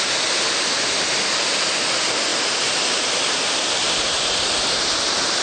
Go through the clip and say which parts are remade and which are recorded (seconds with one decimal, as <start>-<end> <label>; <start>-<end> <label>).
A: 0.0-5.4 recorded